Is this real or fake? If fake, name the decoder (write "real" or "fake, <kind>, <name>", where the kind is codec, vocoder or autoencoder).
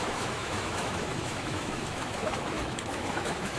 fake, autoencoder, DAC-VAE